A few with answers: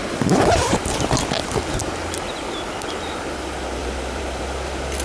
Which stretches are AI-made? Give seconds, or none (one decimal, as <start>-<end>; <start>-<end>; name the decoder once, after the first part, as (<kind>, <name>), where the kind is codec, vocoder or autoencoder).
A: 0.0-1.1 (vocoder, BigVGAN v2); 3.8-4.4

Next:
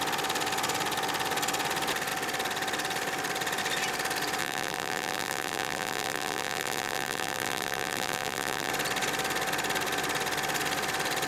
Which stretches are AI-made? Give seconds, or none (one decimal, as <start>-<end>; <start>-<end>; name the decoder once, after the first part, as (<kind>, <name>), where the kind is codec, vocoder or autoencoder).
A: 4.4-8.7 (vocoder, BigVGAN v2)

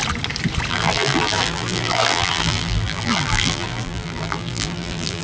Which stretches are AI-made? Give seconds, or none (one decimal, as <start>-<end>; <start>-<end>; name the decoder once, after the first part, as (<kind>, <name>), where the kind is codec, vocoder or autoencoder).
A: 0.7-5.2 (vocoder, BigVGAN v2)

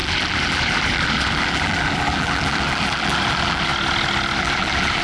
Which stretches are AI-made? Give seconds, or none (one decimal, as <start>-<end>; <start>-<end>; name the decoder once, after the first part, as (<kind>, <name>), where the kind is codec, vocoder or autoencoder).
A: 0.0-3.7 (vocoder, BigVGAN v2); 4.4-5.0

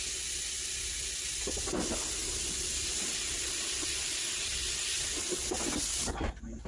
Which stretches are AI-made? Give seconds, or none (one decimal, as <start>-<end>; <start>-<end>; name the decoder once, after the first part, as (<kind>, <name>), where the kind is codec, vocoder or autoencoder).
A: 1.3-1.8 (vocoder, BigVGAN v2); 2.2-5.4